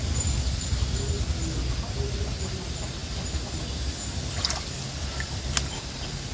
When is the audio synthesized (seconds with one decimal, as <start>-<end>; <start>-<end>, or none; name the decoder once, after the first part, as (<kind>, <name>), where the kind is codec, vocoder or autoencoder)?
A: none